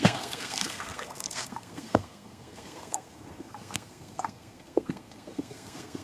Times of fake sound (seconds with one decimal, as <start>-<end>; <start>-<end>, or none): 0.0-6.0